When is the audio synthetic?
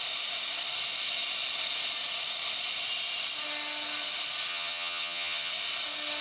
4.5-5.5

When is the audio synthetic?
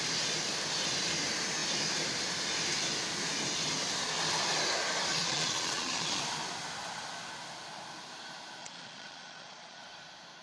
5.1-6.2; 8.6-9.8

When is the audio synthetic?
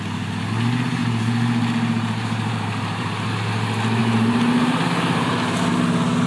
1.0-3.1; 4.0-5.8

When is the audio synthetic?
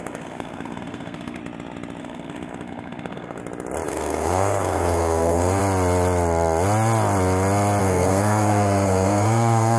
0.0-1.4; 2.0-3.4; 3.9-5.6; 7.8-9.8